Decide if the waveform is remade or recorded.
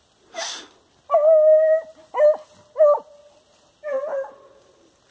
recorded